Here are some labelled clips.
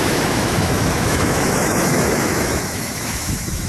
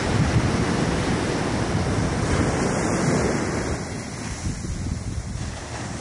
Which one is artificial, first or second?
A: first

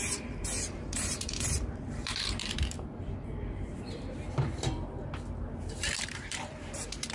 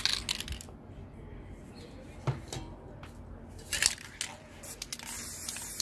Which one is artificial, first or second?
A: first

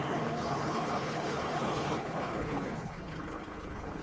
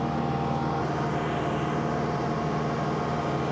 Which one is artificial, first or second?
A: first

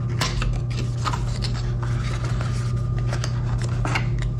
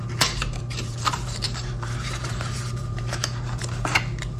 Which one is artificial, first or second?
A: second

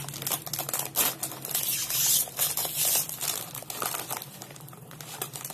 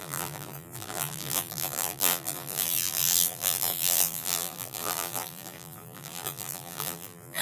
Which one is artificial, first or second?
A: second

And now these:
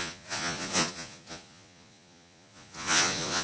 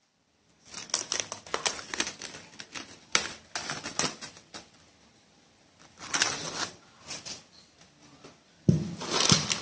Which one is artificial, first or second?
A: first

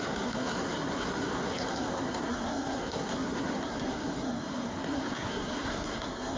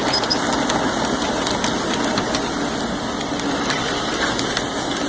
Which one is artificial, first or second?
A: first